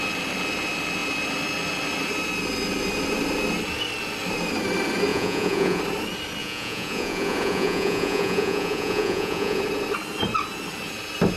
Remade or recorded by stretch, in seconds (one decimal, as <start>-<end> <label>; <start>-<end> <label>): 0.0-5.1 recorded; 5.1-5.8 remade; 5.8-6.4 recorded; 6.4-9.6 remade; 9.6-11.4 recorded